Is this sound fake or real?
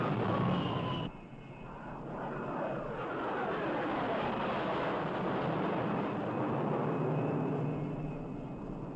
real